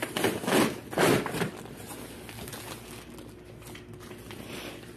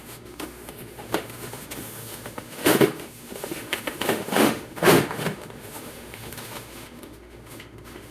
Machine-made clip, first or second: second